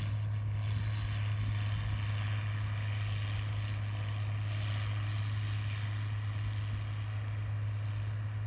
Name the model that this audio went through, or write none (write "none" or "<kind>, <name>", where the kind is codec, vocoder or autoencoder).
none